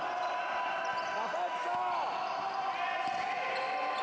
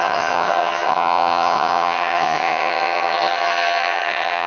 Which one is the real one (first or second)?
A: first